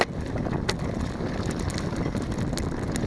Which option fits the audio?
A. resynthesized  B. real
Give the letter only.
B